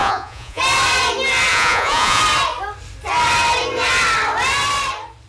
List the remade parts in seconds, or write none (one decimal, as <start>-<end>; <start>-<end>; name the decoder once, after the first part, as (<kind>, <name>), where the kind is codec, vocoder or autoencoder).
0.0-0.6 (vocoder, Vocos); 1.5-2.2